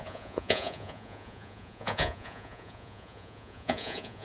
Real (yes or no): no